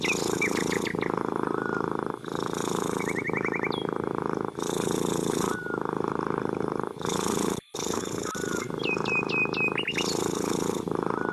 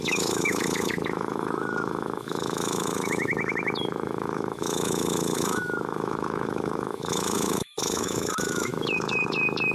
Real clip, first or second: first